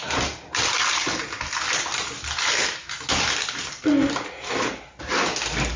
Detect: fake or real real